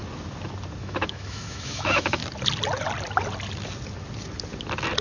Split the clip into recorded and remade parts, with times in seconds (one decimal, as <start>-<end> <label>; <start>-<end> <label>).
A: 0.0-0.8 recorded; 0.8-2.2 remade; 2.2-5.0 recorded